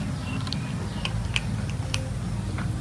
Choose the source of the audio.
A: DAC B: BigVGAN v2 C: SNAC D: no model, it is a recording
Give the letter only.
D